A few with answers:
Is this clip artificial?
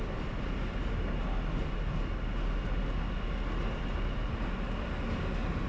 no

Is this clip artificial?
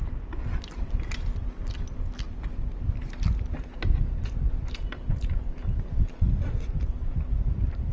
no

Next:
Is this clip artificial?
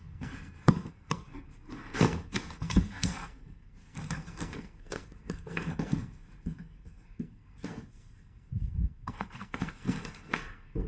yes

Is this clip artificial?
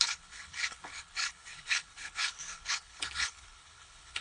yes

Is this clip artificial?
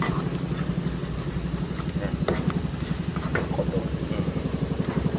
no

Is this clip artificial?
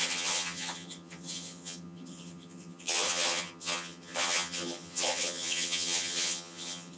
yes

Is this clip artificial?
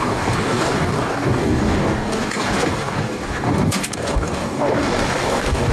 yes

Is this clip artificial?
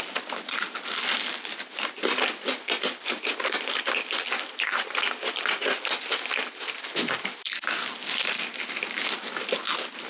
no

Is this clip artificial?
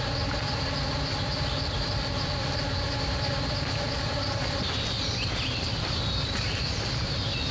no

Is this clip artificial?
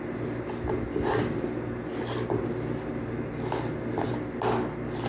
no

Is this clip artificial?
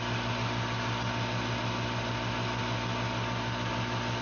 no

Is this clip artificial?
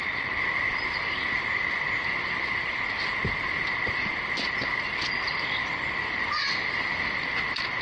no